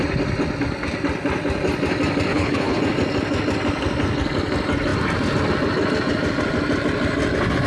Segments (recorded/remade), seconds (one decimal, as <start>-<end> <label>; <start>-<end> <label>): 0.0-2.3 recorded; 2.3-2.8 remade; 2.8-7.7 recorded